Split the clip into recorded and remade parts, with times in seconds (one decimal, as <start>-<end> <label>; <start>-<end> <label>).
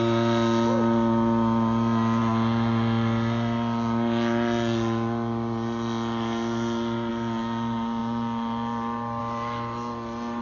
0.0-10.4 recorded